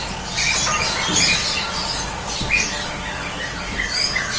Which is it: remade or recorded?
recorded